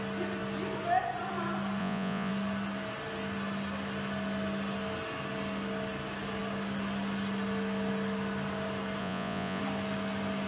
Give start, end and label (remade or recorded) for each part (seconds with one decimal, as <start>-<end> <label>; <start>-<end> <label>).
0.0-1.8 recorded; 1.8-2.3 remade; 2.3-9.0 recorded; 9.0-9.6 remade; 9.6-10.5 recorded